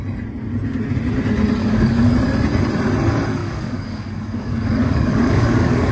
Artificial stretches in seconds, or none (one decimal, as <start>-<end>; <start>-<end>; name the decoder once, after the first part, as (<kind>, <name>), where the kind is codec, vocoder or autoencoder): 1.6-2.1 (codec, DAC); 3.4-5.9